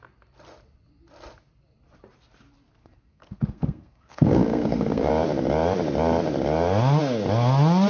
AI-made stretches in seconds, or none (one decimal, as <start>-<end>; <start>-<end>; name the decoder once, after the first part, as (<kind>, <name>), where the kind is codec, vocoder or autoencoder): 2.8-5.1 (codec, SNAC)

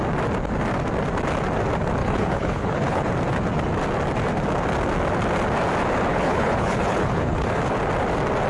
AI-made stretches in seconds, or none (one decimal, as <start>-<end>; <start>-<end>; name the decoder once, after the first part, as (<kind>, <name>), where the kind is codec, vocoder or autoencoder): 2.0-3.1 (codec, HILCodec); 6.1-7.6

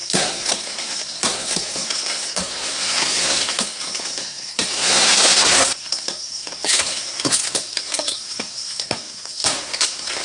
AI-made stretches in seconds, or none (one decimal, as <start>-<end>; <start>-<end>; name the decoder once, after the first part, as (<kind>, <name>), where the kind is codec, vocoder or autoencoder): 0.0-10.2 (codec, SNAC)

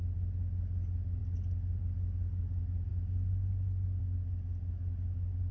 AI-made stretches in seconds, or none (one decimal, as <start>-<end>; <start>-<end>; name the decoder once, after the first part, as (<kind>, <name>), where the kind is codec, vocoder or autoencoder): none

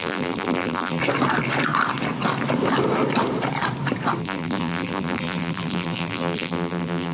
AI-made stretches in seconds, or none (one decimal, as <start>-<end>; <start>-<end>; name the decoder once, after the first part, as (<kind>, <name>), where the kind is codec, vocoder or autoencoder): 0.0-1.0 (vocoder, BigVGAN v2); 4.2-7.1

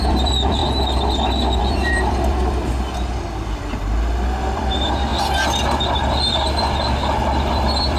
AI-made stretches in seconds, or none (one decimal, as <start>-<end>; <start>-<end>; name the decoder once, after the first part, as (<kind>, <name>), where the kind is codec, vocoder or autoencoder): 0.0-0.6 (vocoder, BigVGAN v2); 1.6-5.1; 5.9-8.0

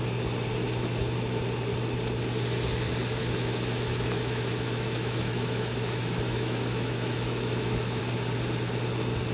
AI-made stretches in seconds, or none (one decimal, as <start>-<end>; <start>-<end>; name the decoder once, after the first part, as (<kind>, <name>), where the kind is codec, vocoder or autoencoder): 3.2-8.0 (autoencoder, DAC-VAE)